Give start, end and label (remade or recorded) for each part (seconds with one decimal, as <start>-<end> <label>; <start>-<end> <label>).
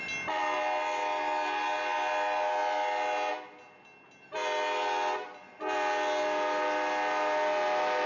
0.0-8.1 recorded